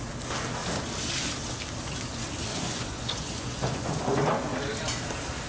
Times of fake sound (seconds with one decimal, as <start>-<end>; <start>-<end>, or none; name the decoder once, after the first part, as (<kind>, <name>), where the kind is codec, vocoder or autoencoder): 2.5-4.0 (vocoder, Vocos)

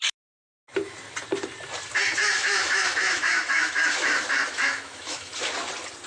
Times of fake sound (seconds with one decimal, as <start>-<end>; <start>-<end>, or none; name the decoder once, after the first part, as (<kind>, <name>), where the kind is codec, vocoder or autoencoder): 1.9-5.3 (autoencoder, DAC-VAE)